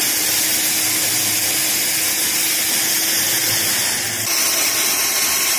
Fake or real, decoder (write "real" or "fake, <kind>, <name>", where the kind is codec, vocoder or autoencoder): real